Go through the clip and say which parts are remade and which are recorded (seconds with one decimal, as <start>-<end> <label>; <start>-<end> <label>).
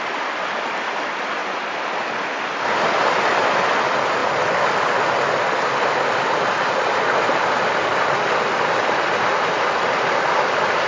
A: 0.0-10.9 recorded